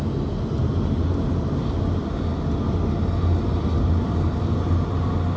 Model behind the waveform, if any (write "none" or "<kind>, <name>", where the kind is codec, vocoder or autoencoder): none